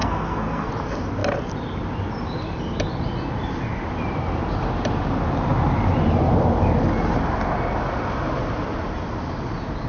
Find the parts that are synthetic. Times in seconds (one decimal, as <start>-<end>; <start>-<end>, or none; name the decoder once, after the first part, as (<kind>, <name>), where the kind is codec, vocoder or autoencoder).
0.0-0.7 (codec, SNAC)